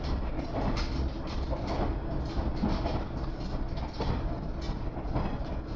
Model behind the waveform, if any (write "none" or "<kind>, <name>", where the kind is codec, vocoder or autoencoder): none